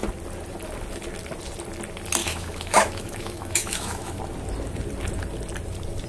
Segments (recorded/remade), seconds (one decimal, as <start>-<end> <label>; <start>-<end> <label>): 0.0-2.2 recorded; 2.2-4.2 remade; 4.2-6.1 recorded